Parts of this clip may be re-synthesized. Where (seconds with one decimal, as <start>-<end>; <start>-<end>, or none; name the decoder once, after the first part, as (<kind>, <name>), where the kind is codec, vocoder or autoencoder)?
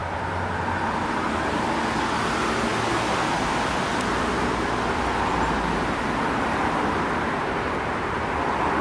none